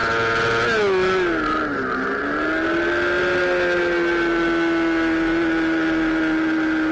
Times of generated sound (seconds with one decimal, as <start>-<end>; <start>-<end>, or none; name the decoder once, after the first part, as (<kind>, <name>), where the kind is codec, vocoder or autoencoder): none